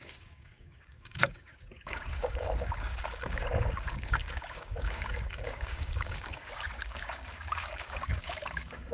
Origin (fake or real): fake